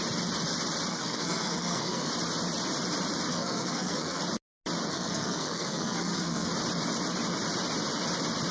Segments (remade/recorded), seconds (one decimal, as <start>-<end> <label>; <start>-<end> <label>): 0.0-0.9 recorded; 0.9-2.1 remade; 2.1-3.3 recorded; 3.3-4.2 remade; 4.2-4.9 recorded; 4.9-6.5 remade; 6.5-8.5 recorded